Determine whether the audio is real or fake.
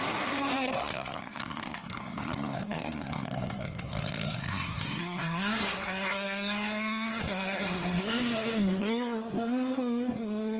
fake